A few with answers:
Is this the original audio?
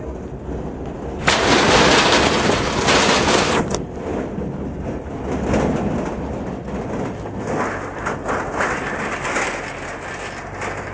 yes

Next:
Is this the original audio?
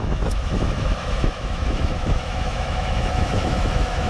no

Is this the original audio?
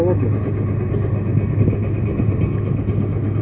yes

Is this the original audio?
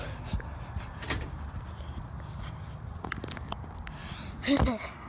yes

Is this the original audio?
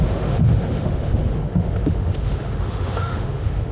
no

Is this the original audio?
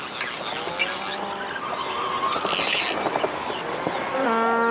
yes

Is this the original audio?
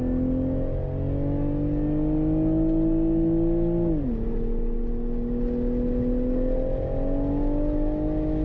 yes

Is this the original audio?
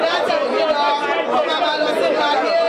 yes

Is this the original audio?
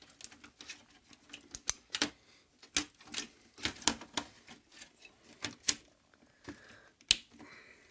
yes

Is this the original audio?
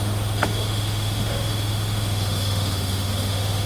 no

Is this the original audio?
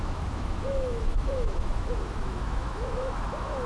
no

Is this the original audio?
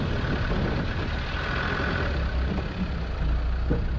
yes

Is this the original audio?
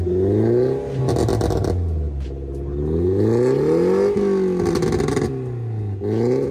yes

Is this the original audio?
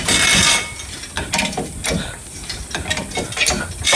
yes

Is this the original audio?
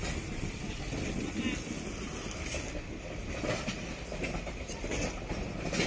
yes